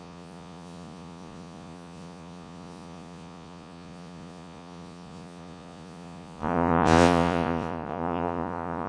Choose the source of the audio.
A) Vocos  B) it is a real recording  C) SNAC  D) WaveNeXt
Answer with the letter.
A